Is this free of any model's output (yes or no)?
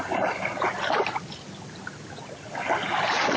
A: yes